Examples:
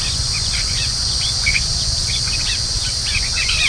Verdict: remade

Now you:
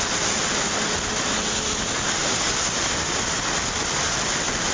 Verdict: recorded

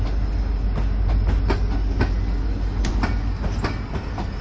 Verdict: recorded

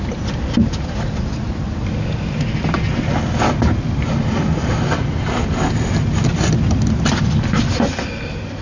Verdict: recorded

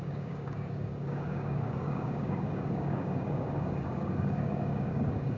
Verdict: remade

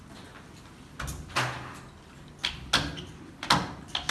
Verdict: recorded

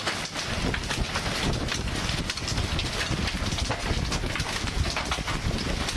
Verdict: recorded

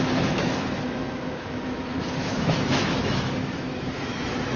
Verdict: remade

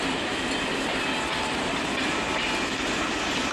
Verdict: recorded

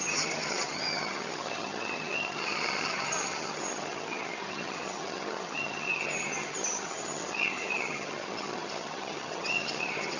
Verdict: remade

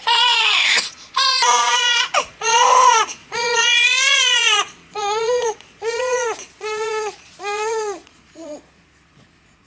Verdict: remade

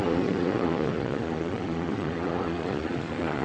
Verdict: remade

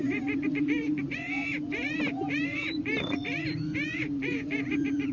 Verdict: remade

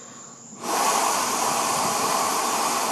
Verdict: recorded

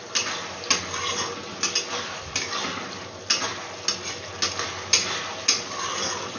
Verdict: recorded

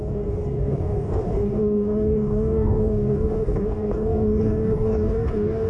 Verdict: remade